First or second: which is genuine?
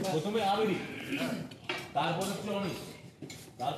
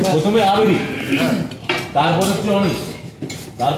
second